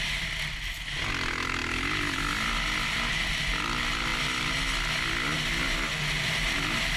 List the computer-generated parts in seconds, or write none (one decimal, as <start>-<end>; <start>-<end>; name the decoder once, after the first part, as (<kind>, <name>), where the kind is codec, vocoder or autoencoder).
none

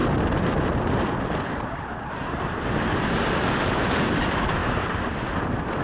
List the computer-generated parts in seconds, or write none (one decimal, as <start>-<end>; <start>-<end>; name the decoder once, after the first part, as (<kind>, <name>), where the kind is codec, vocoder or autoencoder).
none

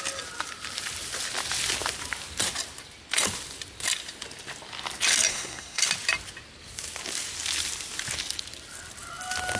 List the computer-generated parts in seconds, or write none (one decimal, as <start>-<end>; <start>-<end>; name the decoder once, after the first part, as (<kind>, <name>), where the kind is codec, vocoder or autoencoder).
5.3-5.8 (codec, SNAC)

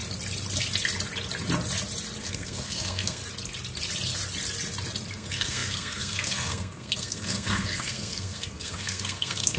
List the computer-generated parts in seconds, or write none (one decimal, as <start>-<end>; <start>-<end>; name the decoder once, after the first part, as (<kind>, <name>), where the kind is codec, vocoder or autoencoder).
2.2-3.2 (codec, SNAC); 5.1-9.6

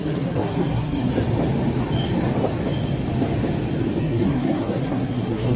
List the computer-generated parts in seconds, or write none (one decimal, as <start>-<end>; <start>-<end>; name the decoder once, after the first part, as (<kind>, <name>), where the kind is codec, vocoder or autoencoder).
0.0-1.1 (codec, SNAC); 4.0-5.6

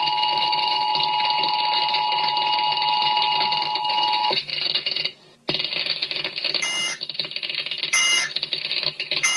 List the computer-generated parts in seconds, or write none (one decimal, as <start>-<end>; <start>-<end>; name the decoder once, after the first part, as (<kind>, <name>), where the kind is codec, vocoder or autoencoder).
0.0-0.9 (autoencoder, DAC-VAE); 3.8-4.5; 5.8-9.4

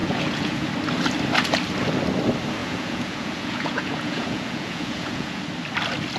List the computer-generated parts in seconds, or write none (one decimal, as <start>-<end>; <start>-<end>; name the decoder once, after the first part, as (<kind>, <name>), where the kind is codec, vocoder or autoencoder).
0.0-0.7 (vocoder, Vocos); 2.6-5.4